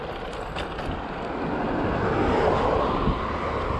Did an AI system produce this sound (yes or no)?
no